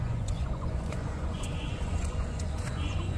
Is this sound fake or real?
fake